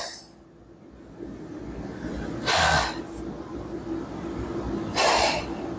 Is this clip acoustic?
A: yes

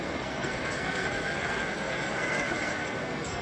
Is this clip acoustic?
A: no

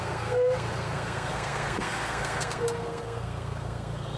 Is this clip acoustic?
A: no